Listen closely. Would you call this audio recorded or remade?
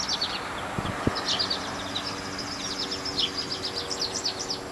recorded